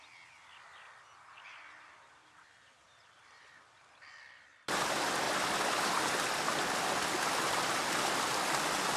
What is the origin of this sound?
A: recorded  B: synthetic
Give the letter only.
A